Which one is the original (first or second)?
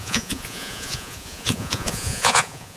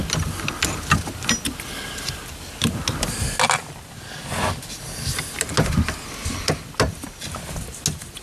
second